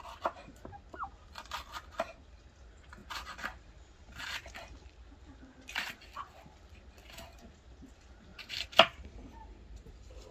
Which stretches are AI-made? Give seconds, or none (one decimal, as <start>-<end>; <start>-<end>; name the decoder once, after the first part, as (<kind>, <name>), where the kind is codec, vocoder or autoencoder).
3.0-5.9 (vocoder, BigVGAN v2)